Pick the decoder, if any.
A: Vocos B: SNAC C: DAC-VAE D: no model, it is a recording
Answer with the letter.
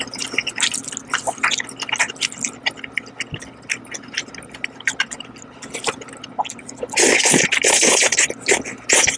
D